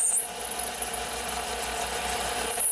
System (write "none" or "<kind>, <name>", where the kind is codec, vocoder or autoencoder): none